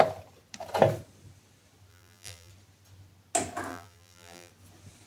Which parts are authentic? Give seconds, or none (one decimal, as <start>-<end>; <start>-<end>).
0.0-1.9; 2.5-3.7; 4.5-5.1